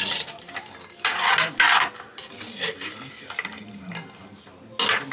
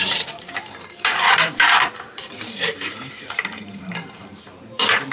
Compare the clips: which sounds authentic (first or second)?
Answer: first